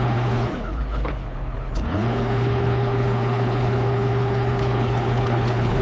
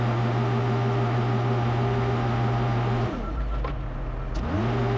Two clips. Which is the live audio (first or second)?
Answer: second